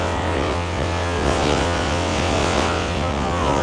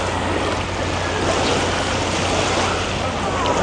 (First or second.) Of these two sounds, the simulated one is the first